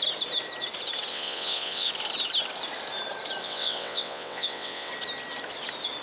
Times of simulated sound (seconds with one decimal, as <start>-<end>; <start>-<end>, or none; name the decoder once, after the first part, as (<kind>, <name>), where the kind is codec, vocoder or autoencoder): 1.1-1.9 (vocoder, WaveNeXt); 3.4-4.9